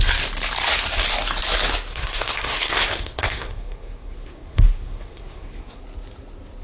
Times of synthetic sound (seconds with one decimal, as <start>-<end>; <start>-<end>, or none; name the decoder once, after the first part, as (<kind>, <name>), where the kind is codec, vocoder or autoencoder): 1.9-5.8 (codec, SNAC)